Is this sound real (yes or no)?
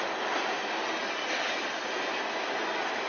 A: yes